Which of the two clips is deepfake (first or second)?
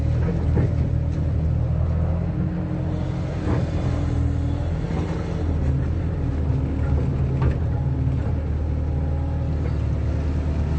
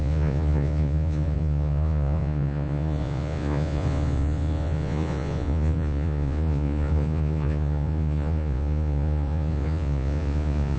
second